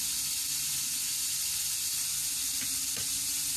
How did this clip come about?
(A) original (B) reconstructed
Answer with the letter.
A